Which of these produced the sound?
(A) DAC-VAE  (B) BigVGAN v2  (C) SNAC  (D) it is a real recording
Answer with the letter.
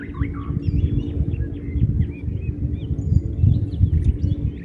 D